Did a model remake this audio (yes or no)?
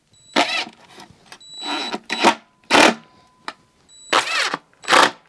no